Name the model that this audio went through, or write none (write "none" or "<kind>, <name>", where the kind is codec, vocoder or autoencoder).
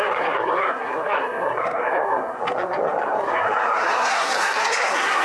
codec, SNAC